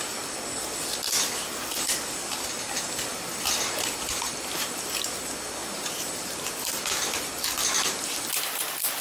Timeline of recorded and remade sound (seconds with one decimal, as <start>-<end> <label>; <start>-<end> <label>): 0.0-5.6 recorded; 5.6-6.8 remade; 6.8-9.0 recorded